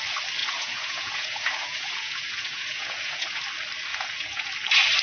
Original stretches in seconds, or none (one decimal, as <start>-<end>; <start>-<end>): 0.0-0.4; 3.4-3.9; 4.5-5.0